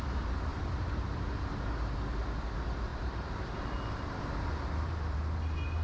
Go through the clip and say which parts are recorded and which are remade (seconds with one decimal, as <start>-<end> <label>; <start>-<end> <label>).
0.0-0.5 recorded; 0.5-1.0 remade; 1.0-2.9 recorded; 2.9-4.2 remade; 4.2-5.8 recorded